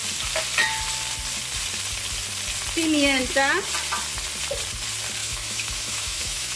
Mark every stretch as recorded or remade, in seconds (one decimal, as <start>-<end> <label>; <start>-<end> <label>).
0.0-5.2 recorded; 5.2-6.6 remade